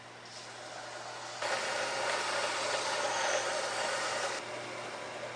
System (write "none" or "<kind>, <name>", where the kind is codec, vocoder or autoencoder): none